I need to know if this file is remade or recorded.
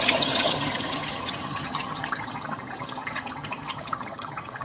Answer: remade